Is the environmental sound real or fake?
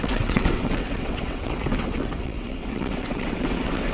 fake